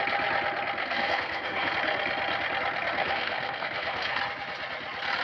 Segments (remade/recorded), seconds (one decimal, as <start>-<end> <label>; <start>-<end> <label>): 0.0-0.8 recorded; 0.8-1.7 remade; 1.7-3.0 recorded; 3.0-4.2 remade; 4.2-5.2 recorded